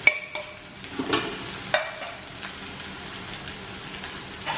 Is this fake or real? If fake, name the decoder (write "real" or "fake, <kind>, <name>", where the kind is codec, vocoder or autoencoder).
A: real